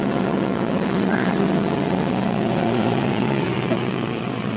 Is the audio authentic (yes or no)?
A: no